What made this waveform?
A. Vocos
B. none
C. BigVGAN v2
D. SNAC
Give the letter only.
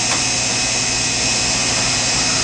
B